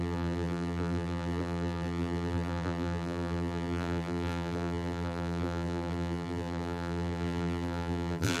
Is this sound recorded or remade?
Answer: remade